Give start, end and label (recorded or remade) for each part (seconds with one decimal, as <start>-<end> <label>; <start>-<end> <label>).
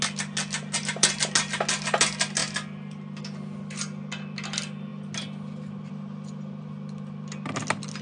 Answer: 0.0-8.0 recorded